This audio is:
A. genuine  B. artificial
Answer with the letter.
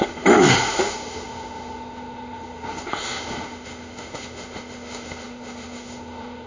B